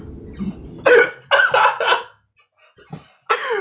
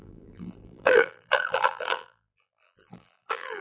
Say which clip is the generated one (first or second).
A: second